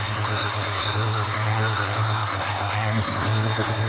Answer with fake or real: fake